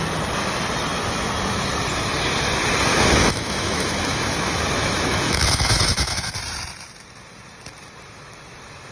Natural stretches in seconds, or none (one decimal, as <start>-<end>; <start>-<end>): 0.0-2.9; 6.3-8.9